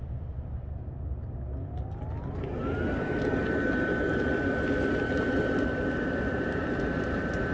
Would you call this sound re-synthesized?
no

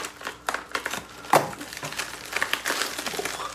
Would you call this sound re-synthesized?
no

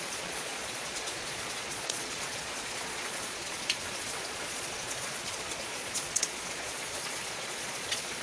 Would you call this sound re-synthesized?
yes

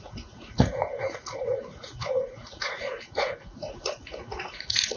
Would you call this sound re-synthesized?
yes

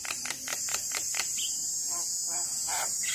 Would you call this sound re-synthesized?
no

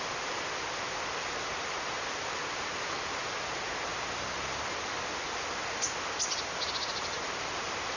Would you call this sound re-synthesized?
no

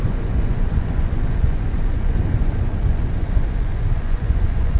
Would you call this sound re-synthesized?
yes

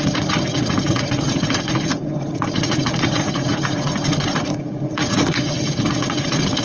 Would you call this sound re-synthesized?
yes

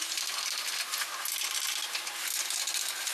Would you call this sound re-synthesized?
no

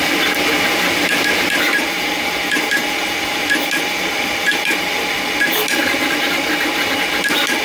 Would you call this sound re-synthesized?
no